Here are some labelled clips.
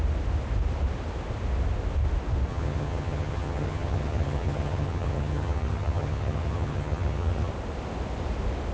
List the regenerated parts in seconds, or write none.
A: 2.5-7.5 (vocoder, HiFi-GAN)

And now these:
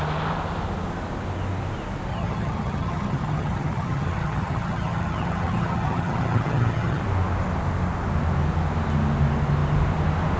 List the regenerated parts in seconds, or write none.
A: 2.1-7.0 (vocoder, HiFi-GAN)

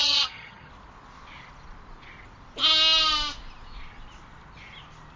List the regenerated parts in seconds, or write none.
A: 0.0-0.7 (vocoder, HiFi-GAN)

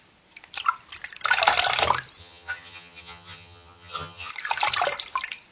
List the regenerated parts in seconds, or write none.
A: 2.2-4.3 (vocoder, HiFi-GAN)